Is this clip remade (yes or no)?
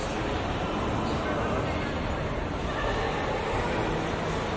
no